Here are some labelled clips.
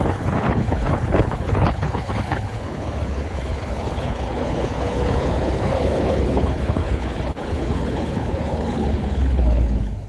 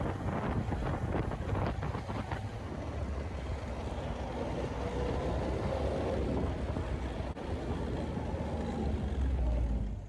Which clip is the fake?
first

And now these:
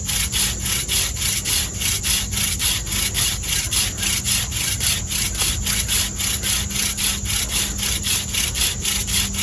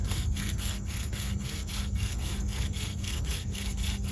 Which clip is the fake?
second